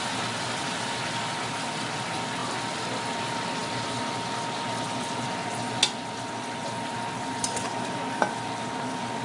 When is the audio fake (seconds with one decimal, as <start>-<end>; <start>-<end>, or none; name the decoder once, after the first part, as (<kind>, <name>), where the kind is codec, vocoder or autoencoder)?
none